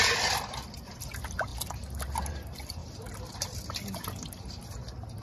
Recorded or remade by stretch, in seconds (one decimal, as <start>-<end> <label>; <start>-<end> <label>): 0.0-5.2 recorded